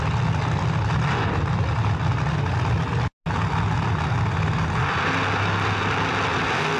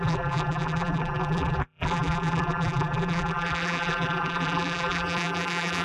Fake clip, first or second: second